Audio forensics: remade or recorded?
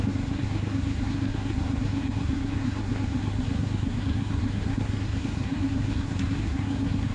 remade